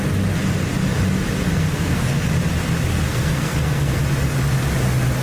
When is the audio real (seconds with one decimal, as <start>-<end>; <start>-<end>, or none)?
0.0-1.5; 2.3-2.9; 4.0-5.2